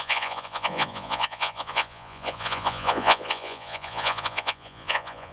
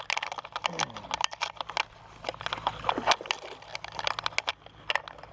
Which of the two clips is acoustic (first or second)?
second